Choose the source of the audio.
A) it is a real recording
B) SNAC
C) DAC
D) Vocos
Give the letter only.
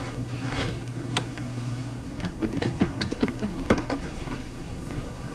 B